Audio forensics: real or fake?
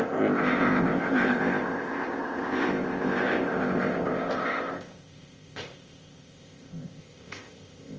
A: fake